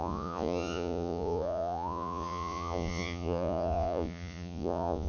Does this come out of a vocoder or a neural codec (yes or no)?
yes